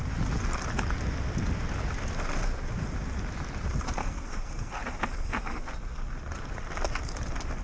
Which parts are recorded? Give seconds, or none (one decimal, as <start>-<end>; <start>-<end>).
0.0-4.0; 4.8-7.6